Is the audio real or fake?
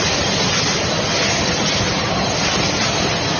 real